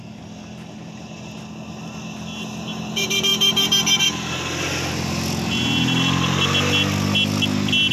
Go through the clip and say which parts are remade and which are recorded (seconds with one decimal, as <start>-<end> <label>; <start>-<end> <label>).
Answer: 0.0-7.9 recorded